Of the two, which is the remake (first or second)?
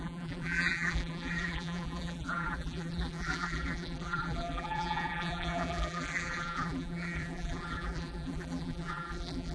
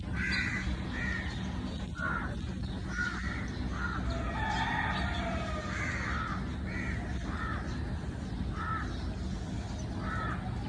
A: first